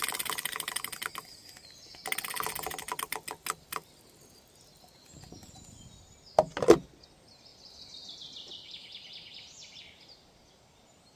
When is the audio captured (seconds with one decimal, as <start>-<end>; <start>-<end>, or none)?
0.0-11.2